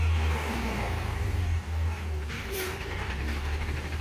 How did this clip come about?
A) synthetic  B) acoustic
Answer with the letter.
A